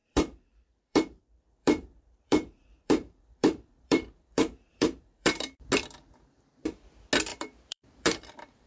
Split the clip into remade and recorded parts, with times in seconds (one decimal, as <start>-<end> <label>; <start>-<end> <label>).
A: 0.0-1.2 remade; 1.2-1.6 recorded; 1.6-5.6 remade; 5.6-7.3 recorded; 7.3-8.7 remade